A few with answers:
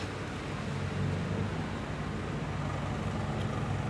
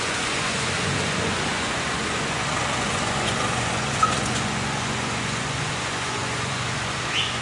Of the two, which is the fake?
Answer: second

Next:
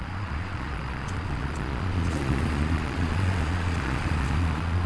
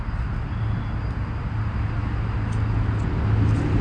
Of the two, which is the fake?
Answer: first